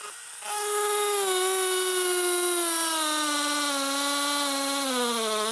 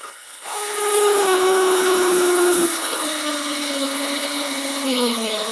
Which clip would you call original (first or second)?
first